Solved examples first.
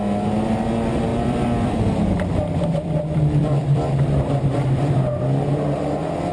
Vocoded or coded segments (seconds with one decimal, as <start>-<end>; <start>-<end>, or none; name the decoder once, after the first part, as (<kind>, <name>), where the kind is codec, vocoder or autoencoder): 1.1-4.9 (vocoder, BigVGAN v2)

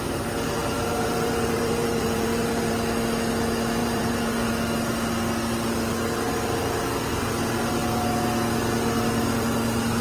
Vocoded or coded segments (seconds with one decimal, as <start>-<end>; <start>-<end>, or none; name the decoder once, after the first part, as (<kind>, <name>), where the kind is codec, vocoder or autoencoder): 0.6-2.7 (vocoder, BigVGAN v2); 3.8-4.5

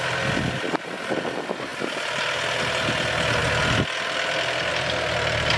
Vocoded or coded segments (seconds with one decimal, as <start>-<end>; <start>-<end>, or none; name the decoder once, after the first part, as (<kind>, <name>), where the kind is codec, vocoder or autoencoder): none